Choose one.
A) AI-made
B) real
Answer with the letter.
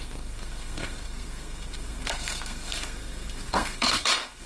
A